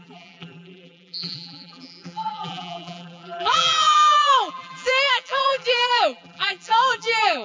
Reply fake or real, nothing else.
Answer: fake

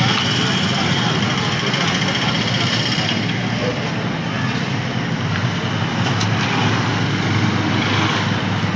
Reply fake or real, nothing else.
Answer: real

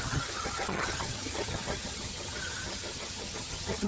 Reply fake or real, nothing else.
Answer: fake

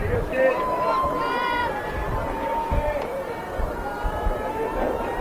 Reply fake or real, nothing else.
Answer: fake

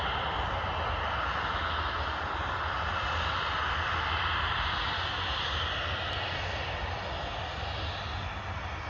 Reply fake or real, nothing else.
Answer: real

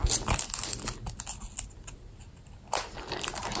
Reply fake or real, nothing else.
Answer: real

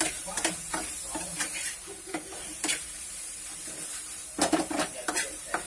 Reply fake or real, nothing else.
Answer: fake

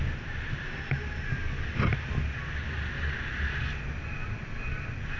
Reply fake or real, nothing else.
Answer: real